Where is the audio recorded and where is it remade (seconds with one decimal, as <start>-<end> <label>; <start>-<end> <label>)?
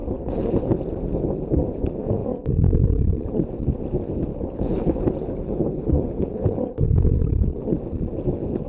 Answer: 0.0-0.7 remade; 0.7-4.3 recorded; 4.3-7.6 remade; 7.6-8.7 recorded